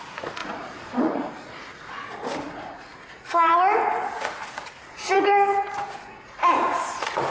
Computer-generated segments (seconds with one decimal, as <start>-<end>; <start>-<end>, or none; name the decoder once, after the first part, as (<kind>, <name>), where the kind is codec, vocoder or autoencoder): 0.0-7.3 (vocoder, Vocos)